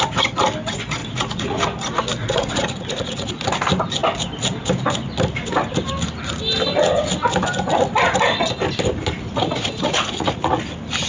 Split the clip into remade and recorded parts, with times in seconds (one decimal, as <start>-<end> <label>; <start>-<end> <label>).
0.0-1.0 recorded; 1.0-1.6 remade; 1.6-2.2 recorded; 2.2-3.4 remade; 3.4-9.3 recorded; 9.3-10.6 remade; 10.6-11.1 recorded